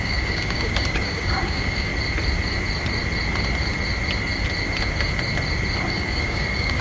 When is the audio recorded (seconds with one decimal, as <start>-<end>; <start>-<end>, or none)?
1.9-5.9